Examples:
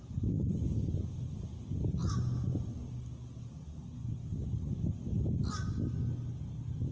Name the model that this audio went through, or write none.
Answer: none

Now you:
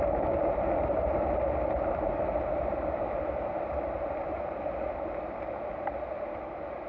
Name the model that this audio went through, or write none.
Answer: vocoder, BigVGAN v2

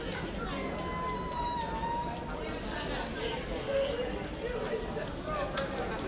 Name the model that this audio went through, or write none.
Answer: none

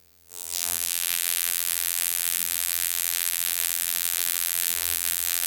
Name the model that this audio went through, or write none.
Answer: vocoder, BigVGAN v2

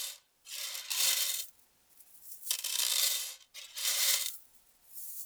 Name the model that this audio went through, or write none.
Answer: vocoder, BigVGAN v2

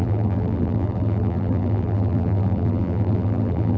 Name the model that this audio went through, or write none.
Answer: vocoder, BigVGAN v2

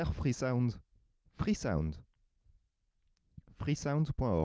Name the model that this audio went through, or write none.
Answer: none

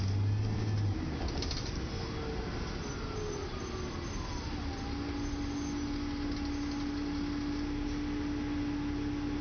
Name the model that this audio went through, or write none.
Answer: none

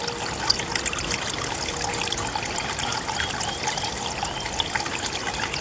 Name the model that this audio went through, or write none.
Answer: none